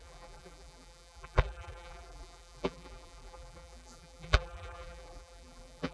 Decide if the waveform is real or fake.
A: fake